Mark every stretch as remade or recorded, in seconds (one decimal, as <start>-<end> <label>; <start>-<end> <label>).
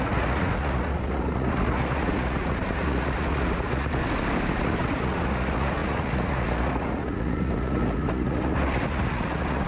0.0-4.0 remade; 4.0-4.6 recorded; 4.6-9.7 remade